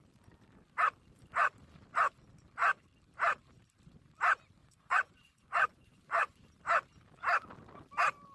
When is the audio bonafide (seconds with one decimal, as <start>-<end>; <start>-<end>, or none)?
0.0-4.6; 6.6-8.3